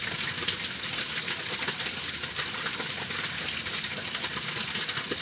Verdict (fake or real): real